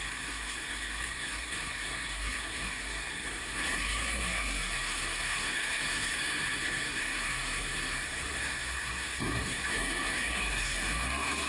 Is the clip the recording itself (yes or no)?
no